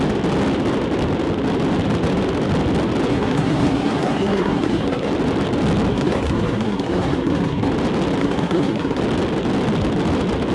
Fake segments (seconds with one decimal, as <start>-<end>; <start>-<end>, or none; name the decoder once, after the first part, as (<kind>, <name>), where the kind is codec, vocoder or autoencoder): 3.1-5.1 (codec, SNAC); 5.9-7.7; 8.2-9.0